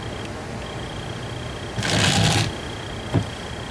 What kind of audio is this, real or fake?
real